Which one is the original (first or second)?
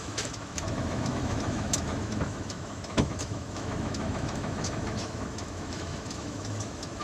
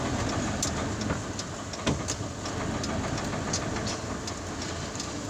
second